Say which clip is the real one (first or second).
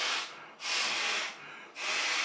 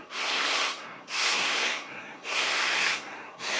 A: first